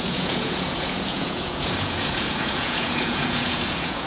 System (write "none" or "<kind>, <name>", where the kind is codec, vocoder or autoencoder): vocoder, Vocos